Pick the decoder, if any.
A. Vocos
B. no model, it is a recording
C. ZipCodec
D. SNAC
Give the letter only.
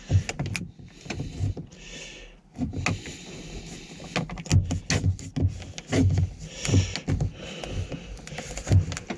B